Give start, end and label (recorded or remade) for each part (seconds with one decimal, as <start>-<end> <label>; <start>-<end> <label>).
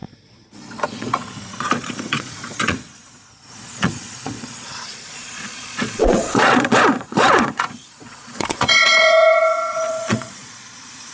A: 0.0-11.1 remade